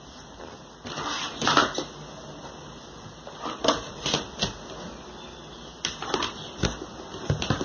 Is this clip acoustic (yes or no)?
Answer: yes